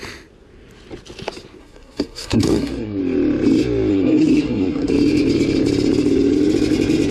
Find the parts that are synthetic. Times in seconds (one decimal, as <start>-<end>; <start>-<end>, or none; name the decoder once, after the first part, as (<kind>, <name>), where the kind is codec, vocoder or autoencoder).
1.6-3.0 (codec, SNAC); 3.9-4.9